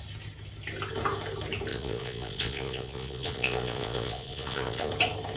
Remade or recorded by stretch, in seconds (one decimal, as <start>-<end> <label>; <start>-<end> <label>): 0.0-1.7 recorded; 1.7-4.9 remade; 4.9-5.4 recorded